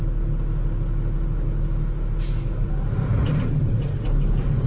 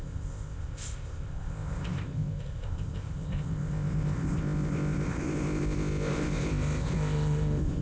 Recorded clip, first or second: first